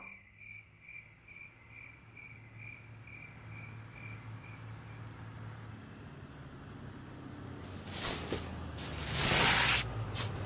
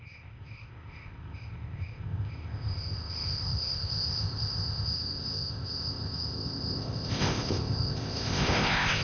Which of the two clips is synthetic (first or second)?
second